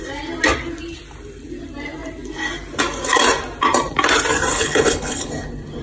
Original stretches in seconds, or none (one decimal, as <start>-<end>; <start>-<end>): 0.0-4.5; 5.3-5.8